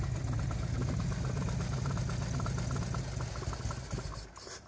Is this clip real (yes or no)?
yes